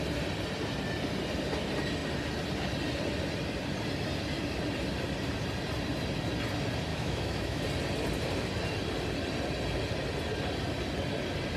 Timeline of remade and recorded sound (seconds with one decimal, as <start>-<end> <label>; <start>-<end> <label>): 0.0-6.9 recorded; 6.9-7.6 remade; 7.6-11.6 recorded